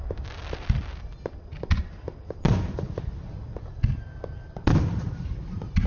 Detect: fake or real real